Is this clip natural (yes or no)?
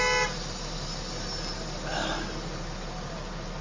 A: yes